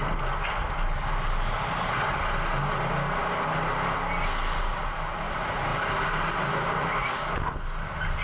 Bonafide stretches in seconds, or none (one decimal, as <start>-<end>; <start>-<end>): 0.0-8.2